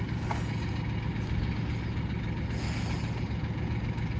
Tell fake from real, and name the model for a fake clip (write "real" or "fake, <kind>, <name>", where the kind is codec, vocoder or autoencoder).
real